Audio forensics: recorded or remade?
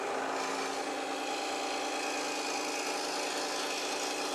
recorded